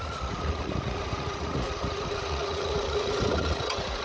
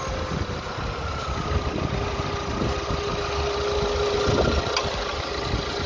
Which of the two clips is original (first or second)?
second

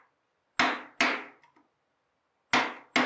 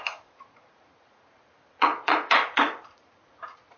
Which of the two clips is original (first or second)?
first